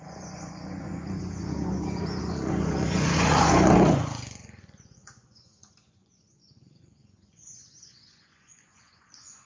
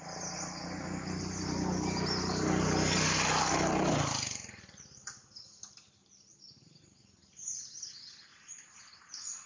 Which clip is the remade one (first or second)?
first